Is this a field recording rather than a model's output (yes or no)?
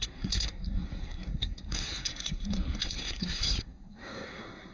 no